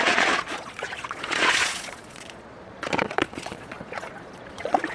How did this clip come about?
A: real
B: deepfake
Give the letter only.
B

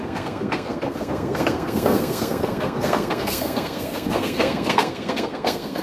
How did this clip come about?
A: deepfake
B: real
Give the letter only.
A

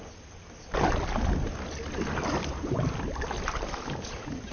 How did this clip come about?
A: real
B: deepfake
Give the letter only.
A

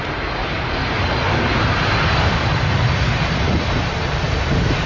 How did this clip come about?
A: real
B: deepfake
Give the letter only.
B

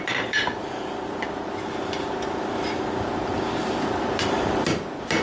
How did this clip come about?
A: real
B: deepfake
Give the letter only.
A